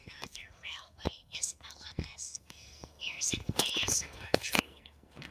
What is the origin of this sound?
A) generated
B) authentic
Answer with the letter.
A